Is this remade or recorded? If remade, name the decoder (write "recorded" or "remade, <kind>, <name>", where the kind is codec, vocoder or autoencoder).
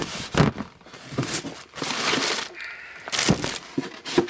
recorded